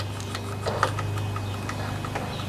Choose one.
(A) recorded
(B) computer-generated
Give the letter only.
A